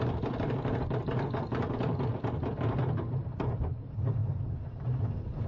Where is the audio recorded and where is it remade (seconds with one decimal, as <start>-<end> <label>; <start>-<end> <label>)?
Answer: 0.0-2.1 remade; 2.1-3.1 recorded; 3.1-5.5 remade